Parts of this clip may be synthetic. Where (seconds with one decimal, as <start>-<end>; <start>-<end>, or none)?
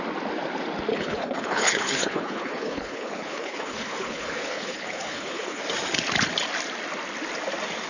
0.9-5.6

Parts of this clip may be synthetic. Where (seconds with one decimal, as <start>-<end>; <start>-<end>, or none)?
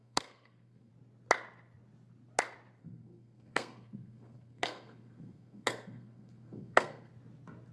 0.0-0.9; 2.8-7.1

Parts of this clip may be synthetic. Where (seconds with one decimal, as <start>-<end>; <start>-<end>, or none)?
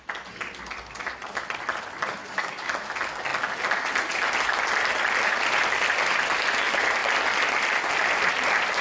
2.2-2.7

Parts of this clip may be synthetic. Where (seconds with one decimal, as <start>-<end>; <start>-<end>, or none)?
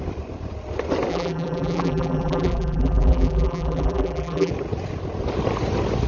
1.1-4.5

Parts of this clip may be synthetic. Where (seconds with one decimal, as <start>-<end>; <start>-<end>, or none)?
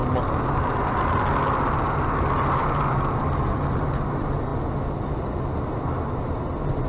none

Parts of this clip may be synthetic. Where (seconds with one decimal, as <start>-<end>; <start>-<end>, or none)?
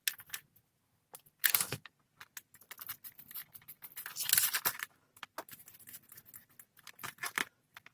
1.4-1.9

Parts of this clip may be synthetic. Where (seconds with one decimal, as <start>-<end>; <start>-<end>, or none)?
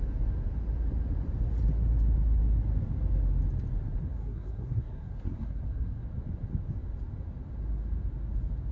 4.2-6.0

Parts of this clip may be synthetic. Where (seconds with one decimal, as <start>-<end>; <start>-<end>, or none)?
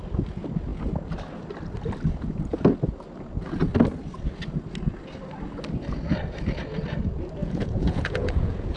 7.4-8.8